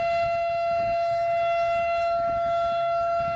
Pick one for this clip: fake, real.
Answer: fake